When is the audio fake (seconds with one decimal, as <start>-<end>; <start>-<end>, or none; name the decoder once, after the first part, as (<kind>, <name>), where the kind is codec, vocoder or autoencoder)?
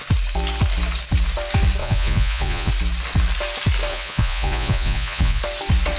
1.8-2.7 (vocoder, Vocos); 3.9-5.4